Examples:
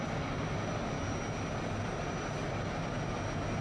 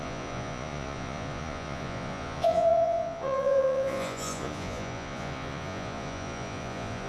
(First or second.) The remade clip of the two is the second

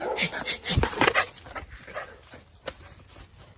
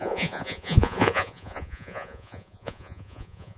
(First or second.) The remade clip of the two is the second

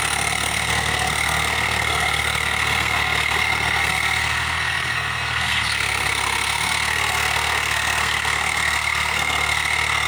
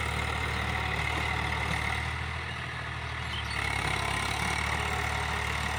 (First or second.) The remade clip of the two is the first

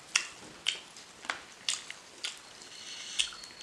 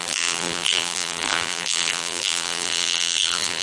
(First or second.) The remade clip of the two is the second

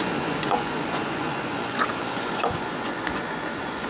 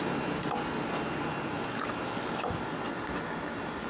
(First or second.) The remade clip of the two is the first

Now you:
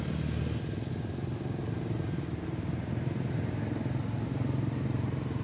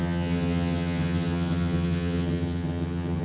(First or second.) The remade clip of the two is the second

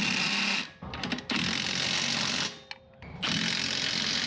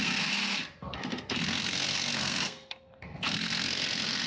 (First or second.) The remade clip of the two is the second